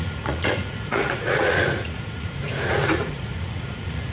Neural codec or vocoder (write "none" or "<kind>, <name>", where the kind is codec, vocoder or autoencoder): vocoder, Vocos